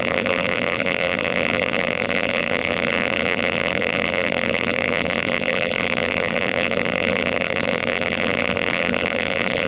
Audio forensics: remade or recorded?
remade